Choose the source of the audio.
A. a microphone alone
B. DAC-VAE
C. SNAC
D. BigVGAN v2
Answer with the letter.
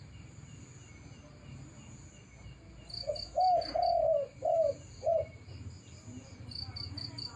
A